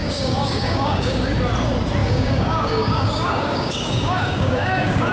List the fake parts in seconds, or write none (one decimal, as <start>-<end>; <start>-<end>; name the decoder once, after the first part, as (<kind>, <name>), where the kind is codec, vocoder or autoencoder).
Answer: 0.0-1.3 (codec, DAC); 2.0-5.1